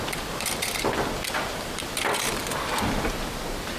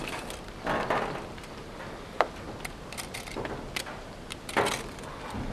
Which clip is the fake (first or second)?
first